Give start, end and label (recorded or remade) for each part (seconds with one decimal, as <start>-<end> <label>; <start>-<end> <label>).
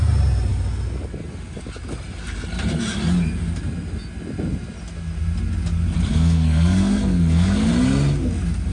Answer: 0.0-6.1 recorded; 6.1-7.7 remade; 7.7-8.7 recorded